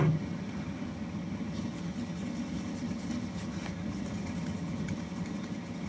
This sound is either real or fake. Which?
fake